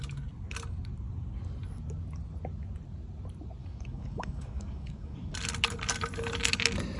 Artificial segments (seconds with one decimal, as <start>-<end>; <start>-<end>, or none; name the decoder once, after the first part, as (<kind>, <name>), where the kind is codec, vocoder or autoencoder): 3.6-5.3 (codec, DAC)